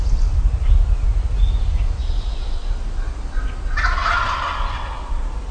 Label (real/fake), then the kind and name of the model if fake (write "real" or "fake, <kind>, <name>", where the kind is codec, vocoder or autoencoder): real